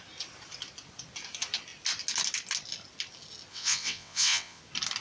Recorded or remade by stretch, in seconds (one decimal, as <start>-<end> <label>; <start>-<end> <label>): 0.0-3.5 recorded; 3.5-4.6 remade; 4.6-5.0 recorded